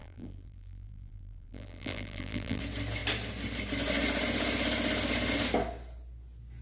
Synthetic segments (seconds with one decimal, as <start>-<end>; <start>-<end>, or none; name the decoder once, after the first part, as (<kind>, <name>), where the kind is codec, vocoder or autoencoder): 0.0-2.6 (vocoder, BigVGAN v2)